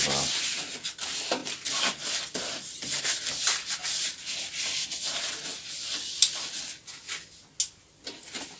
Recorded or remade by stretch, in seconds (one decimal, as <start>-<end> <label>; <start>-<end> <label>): 0.0-3.8 recorded; 3.8-4.6 remade; 4.6-5.5 recorded; 5.5-7.1 remade; 7.1-8.6 recorded